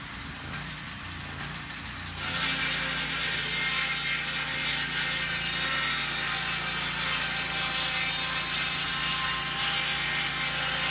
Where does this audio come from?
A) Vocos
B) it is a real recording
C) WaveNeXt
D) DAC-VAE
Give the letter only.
B